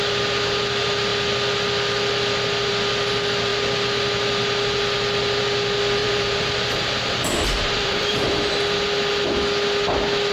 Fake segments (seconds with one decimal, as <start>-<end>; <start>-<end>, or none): 6.0-8.5